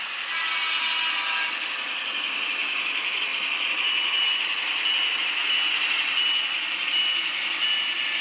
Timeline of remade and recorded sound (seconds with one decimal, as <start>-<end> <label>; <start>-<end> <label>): 0.0-8.2 recorded